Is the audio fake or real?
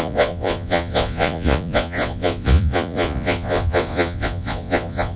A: fake